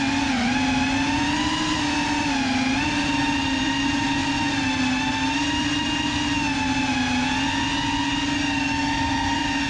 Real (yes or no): yes